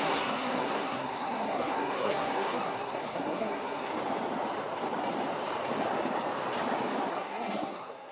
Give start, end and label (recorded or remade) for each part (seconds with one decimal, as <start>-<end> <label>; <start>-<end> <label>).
0.0-3.9 remade; 3.9-7.1 recorded; 7.1-8.1 remade